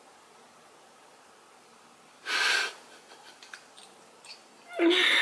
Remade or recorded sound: recorded